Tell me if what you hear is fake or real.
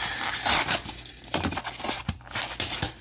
real